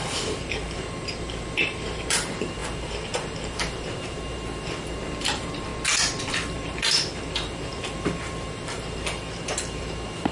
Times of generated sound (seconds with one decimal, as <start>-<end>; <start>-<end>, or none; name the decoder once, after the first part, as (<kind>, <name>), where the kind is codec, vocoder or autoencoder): 0.0-5.7 (vocoder, BigVGAN v2); 6.2-10.3

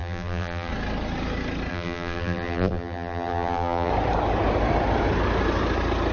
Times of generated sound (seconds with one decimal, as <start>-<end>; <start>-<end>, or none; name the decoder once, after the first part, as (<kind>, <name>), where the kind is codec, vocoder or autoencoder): 0.0-0.7 (vocoder, BigVGAN v2); 1.7-3.9